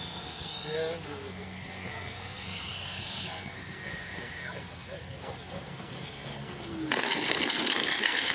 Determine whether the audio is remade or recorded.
remade